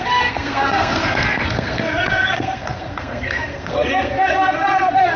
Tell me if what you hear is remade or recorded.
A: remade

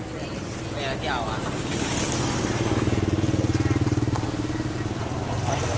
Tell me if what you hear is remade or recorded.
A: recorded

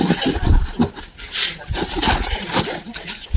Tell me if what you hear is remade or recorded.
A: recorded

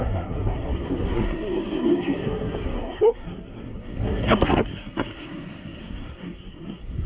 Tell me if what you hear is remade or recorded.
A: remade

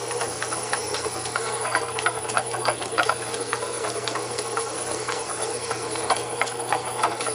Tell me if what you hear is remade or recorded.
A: remade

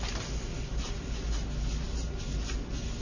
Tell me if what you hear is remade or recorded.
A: recorded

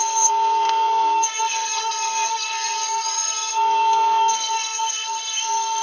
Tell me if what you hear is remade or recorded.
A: remade